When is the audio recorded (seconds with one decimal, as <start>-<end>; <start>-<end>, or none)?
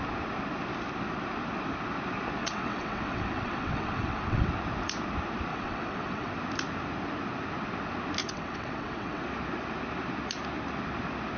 0.0-2.4; 4.5-5.5; 6.3-8.2; 9.2-11.4